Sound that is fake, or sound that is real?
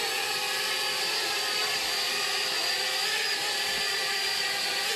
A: fake